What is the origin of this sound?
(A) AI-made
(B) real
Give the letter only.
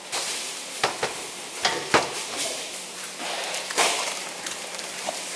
A